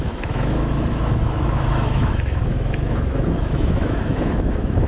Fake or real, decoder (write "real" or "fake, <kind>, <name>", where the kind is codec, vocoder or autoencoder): fake, autoencoder, DAC-VAE